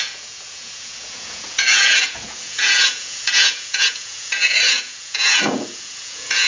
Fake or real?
fake